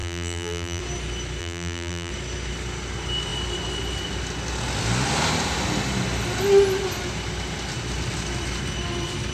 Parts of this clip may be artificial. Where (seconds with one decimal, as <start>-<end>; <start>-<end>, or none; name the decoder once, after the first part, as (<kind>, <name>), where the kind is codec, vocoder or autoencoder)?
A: 0.0-0.8 (vocoder, BigVGAN v2); 1.4-2.1